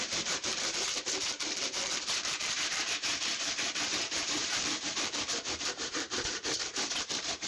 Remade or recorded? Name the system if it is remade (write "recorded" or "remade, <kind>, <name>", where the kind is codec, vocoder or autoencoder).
remade, vocoder, BigVGAN v2